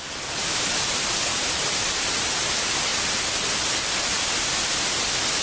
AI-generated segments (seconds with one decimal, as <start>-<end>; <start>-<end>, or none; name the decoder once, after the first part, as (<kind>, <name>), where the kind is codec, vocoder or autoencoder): 1.3-2.3 (vocoder, BigVGAN v2); 2.9-4.3